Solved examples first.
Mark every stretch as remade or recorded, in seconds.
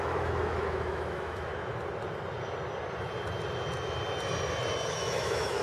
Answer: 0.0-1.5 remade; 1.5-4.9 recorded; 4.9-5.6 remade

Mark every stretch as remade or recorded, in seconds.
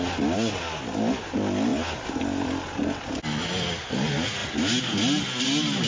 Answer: 0.0-5.9 recorded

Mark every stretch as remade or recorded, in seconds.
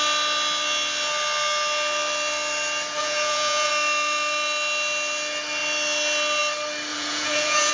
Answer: 0.0-3.0 recorded; 3.0-3.7 remade; 3.7-6.9 recorded; 6.9-7.7 remade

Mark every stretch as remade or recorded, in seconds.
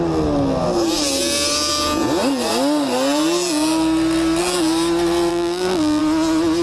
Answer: 0.0-5.3 recorded; 5.3-6.0 remade; 6.0-6.6 recorded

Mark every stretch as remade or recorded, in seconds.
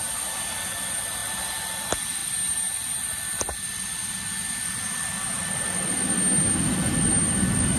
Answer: 0.0-7.8 recorded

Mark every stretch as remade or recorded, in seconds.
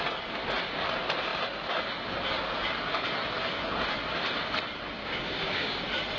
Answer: 0.0-5.0 recorded; 5.0-5.8 remade; 5.8-6.2 recorded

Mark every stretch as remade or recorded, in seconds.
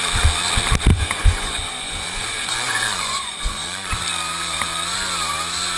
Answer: 0.0-0.9 recorded; 0.9-3.9 remade; 3.9-5.8 recorded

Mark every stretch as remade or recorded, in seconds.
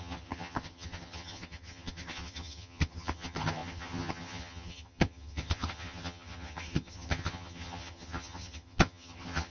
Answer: 0.0-9.5 remade